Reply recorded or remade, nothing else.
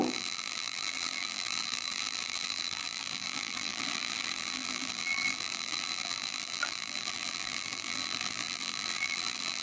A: remade